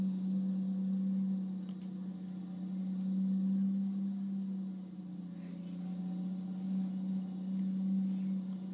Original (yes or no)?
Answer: yes